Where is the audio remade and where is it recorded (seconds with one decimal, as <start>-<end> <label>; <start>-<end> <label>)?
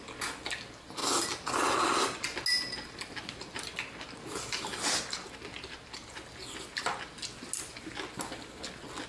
0.0-9.1 recorded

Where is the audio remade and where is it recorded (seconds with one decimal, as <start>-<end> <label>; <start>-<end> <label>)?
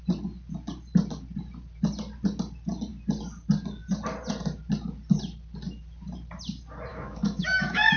0.0-6.9 recorded; 6.9-8.0 remade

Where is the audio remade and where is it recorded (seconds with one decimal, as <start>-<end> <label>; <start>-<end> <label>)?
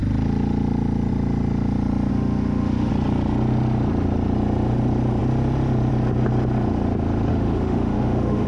0.0-2.1 recorded; 2.1-2.9 remade; 2.9-7.3 recorded; 7.3-8.5 remade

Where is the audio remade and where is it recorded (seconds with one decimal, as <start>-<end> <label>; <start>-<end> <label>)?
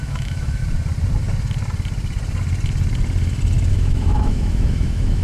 0.0-0.6 remade; 0.6-3.7 recorded; 3.7-5.2 remade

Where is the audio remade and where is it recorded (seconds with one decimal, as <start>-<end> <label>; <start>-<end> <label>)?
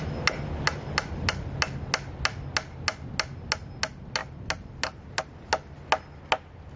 0.0-6.8 recorded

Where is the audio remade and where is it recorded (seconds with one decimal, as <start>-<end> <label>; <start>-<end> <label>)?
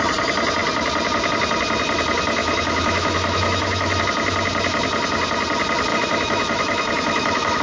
0.0-2.4 recorded; 2.4-4.0 remade; 4.0-5.9 recorded; 5.9-7.6 remade